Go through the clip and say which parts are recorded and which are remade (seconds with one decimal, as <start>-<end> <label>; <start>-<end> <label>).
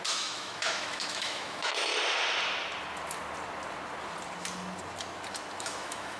0.0-1.9 remade; 1.9-5.6 recorded; 5.6-6.2 remade